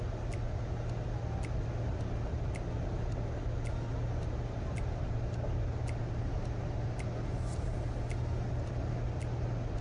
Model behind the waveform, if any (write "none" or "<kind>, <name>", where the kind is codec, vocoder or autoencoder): none